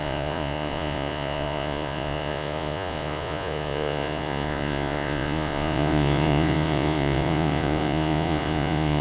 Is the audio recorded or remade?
remade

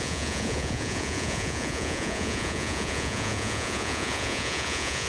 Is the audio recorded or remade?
remade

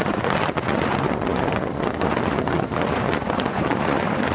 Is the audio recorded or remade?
remade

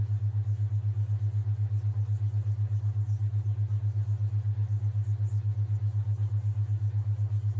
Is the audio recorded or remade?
recorded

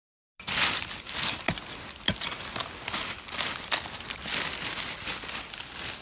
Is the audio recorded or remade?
recorded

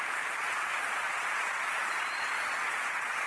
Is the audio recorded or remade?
remade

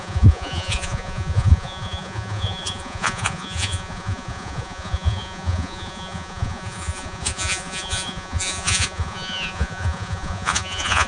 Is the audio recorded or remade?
remade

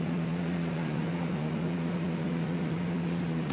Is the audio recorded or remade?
remade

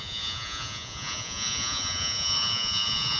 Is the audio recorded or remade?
remade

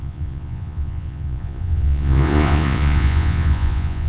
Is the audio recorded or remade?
remade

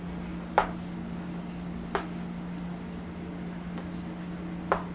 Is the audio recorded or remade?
recorded